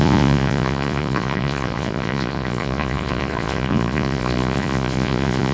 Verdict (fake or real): fake